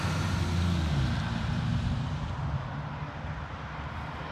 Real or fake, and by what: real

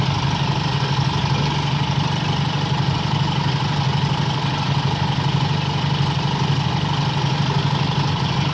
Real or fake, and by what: real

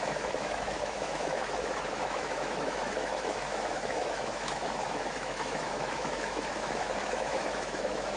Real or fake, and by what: fake, autoencoder, DAC-VAE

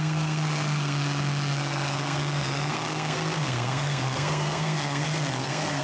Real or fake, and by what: fake, codec, SNAC